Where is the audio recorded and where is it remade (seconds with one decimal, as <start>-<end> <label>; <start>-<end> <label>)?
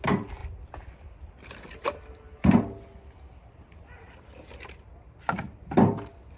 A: 0.0-6.4 recorded